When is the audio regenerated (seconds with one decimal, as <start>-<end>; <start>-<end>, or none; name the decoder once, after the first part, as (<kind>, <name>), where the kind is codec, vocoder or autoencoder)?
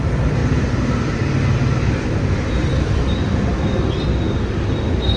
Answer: 0.4-3.5 (vocoder, BigVGAN v2)